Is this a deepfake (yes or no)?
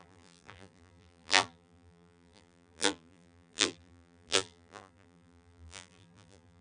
yes